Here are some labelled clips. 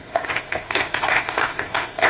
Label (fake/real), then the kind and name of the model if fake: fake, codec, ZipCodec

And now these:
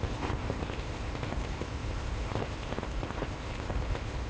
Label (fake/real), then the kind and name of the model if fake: fake, codec, ZipCodec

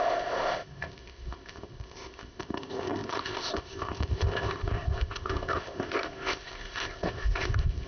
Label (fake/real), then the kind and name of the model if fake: fake, codec, ZipCodec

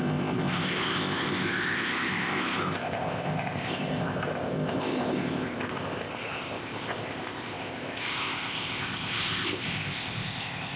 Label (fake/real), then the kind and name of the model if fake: fake, codec, ZipCodec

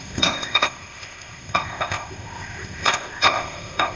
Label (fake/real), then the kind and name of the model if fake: fake, codec, ZipCodec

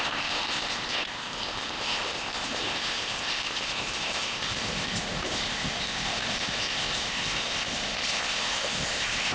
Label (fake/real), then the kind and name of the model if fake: fake, codec, ZipCodec